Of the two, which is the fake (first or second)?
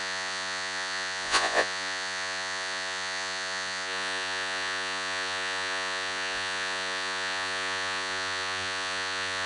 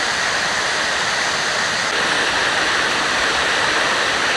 first